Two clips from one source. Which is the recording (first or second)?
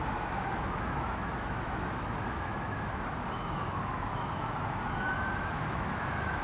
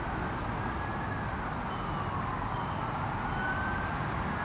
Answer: second